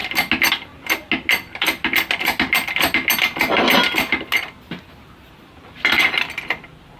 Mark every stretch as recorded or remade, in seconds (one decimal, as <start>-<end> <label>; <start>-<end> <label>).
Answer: 0.0-7.0 recorded